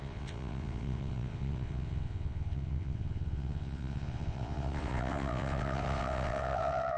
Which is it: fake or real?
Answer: fake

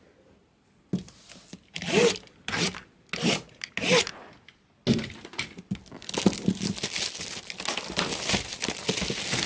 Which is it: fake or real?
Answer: real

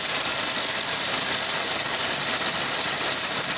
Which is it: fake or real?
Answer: real